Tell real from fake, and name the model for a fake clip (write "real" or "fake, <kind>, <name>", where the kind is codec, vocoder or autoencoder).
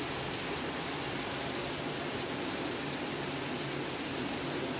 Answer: real